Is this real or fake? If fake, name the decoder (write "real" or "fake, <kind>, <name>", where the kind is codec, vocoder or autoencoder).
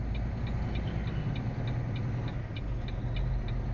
real